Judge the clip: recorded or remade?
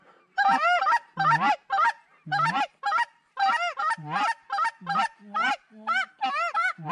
recorded